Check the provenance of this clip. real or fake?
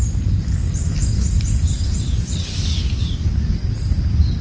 real